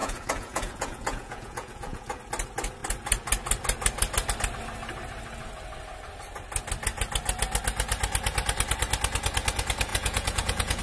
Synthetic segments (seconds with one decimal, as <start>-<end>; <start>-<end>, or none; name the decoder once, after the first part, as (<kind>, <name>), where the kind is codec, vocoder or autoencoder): 0.0-2.2 (vocoder, Vocos); 9.9-10.8